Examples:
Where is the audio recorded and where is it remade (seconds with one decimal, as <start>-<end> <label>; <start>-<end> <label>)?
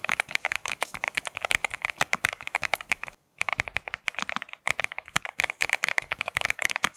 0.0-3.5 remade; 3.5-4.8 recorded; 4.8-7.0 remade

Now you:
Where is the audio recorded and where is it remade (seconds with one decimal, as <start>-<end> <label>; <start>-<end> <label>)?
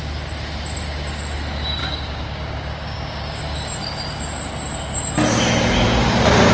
0.0-1.8 recorded; 1.8-3.4 remade; 3.4-6.5 recorded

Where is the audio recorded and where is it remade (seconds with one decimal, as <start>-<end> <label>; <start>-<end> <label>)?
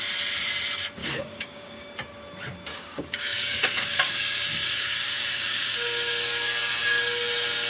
0.0-1.0 recorded; 1.0-1.9 remade; 1.9-2.7 recorded; 2.7-6.7 remade; 6.7-7.7 recorded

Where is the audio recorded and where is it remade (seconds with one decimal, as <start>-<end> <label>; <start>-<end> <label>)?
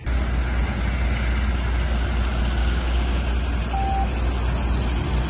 0.0-2.6 recorded; 2.6-3.2 remade; 3.2-5.3 recorded